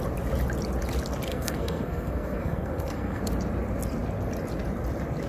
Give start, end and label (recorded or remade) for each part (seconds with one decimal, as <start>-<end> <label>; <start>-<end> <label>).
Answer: 0.0-1.3 recorded; 1.3-3.2 remade; 3.2-5.3 recorded